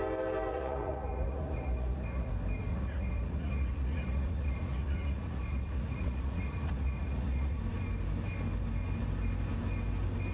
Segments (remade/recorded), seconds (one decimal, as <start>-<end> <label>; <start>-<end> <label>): 0.0-0.5 recorded; 0.5-2.3 remade; 2.3-2.7 recorded; 2.7-7.6 remade; 7.6-10.3 recorded